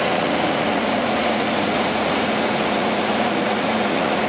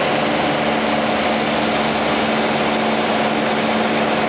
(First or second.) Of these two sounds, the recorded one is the second